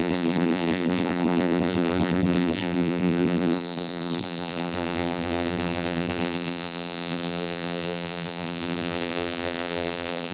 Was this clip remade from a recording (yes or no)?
yes